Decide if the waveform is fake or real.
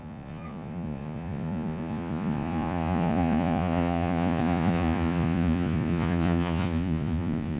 fake